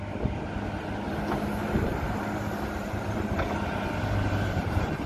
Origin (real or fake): real